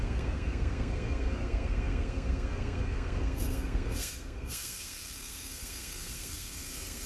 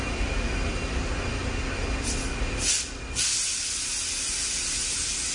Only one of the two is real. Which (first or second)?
second